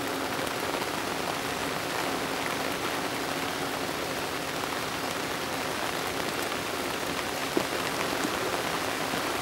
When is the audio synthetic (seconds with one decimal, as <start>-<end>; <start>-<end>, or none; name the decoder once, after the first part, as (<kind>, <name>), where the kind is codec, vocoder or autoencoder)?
7.4-8.7 (vocoder, BigVGAN v2)

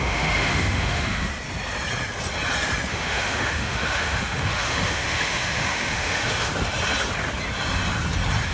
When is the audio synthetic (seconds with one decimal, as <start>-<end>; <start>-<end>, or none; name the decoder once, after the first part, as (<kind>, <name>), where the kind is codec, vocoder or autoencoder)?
0.0-1.3 (autoencoder, DAC-VAE); 2.9-6.5

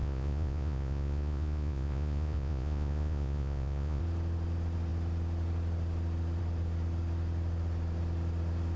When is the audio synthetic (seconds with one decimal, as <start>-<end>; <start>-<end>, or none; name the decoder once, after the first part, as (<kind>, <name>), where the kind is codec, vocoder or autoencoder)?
0.0-4.0 (vocoder, Vocos)

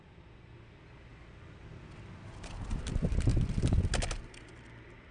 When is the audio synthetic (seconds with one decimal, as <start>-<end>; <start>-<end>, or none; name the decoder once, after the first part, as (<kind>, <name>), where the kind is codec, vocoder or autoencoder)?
0.0-3.3 (vocoder, BigVGAN v2); 4.4-5.1

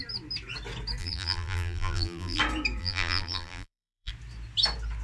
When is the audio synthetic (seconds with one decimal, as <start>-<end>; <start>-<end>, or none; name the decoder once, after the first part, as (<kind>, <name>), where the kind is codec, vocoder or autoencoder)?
1.0-2.4 (vocoder, BigVGAN v2); 2.8-4.1

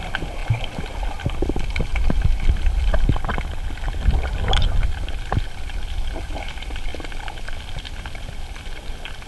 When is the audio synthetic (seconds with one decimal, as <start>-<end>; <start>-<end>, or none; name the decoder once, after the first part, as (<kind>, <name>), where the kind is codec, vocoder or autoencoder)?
none

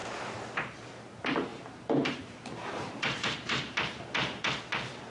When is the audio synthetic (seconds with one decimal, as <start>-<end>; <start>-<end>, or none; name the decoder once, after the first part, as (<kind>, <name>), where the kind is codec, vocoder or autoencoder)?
1.5-4.6 (vocoder, BigVGAN v2)

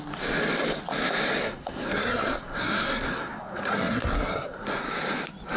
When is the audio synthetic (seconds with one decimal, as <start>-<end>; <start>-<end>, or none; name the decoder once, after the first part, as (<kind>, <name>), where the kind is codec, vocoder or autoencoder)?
1.4-4.8 (codec, SNAC)